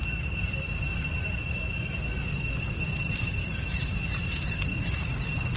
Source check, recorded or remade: recorded